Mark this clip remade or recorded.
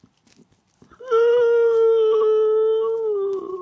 recorded